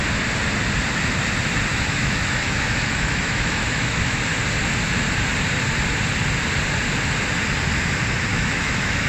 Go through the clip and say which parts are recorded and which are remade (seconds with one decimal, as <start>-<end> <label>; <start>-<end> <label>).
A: 0.0-1.7 recorded; 1.7-4.3 remade; 4.3-8.3 recorded; 8.3-9.1 remade